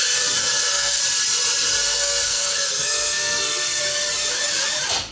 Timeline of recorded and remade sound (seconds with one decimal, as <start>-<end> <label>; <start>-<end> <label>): 0.0-0.4 recorded; 0.4-1.0 remade; 1.0-1.9 recorded; 1.9-3.8 remade; 3.8-5.1 recorded